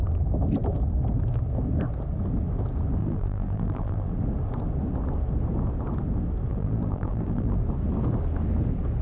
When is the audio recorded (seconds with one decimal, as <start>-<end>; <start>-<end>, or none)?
0.0-3.0; 4.1-6.5; 7.6-9.0